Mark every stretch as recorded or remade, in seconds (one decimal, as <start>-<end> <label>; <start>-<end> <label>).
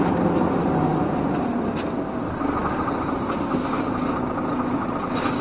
0.0-5.4 recorded